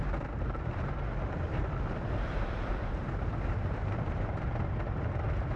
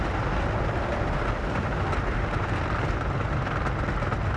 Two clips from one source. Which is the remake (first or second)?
first